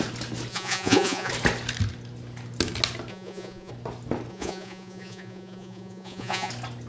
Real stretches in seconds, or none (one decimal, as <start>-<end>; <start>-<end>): 0.0-0.5; 1.3-3.1; 3.7-4.3; 6.5-6.9